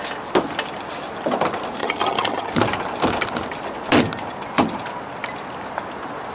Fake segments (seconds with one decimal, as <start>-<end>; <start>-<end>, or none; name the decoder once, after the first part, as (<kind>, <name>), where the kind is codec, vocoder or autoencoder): 1.8-2.5 (vocoder, HiFi-GAN)